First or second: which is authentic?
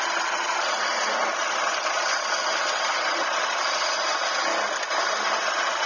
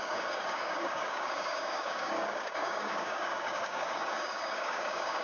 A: first